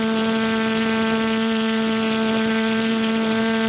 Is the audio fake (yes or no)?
yes